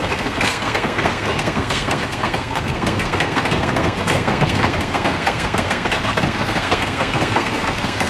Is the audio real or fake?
fake